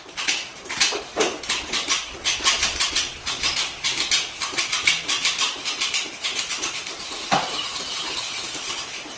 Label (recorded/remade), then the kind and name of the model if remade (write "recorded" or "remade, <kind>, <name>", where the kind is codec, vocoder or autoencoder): remade, vocoder, BigVGAN v2